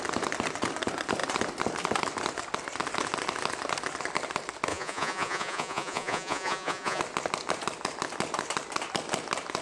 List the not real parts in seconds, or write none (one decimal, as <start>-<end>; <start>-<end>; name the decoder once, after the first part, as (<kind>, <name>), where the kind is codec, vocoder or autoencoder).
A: 4.7-7.0 (vocoder, Vocos)